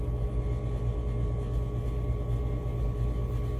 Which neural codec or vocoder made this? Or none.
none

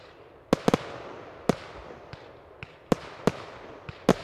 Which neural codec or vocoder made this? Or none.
none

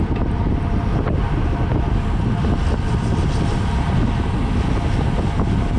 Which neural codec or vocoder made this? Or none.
none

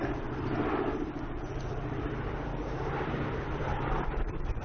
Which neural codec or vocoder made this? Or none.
vocoder, BigVGAN v2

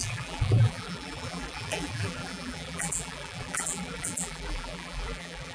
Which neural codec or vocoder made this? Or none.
vocoder, BigVGAN v2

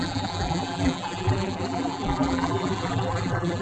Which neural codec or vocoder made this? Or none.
vocoder, BigVGAN v2